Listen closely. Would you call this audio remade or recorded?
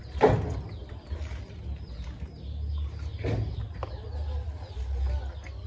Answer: recorded